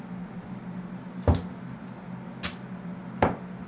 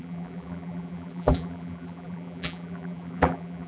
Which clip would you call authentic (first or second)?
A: first